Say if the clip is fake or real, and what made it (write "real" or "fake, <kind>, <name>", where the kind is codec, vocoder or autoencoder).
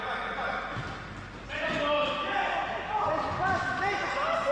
real